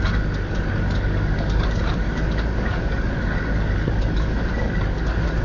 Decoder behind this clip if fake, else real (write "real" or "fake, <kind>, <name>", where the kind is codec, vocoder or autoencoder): fake, codec, DAC